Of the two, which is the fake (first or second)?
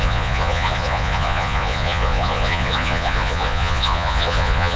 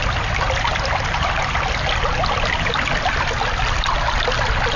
first